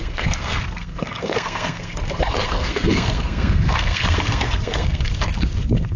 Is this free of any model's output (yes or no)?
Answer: no